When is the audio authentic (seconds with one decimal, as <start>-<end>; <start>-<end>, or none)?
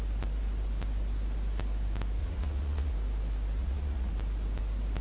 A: 0.0-2.2; 2.9-3.6; 4.1-5.0